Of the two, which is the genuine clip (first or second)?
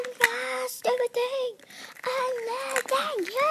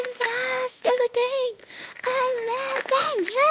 first